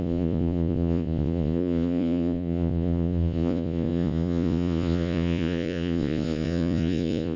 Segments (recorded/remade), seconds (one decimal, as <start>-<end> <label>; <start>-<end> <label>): 0.0-7.4 remade